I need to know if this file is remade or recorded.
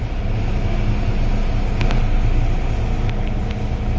recorded